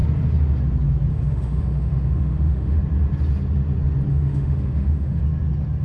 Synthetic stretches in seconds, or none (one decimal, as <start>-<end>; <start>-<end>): 1.1-2.8; 4.1-5.2